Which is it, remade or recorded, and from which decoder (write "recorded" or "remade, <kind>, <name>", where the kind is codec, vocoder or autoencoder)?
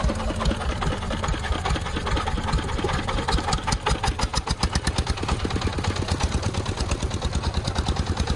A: remade, vocoder, BigVGAN v2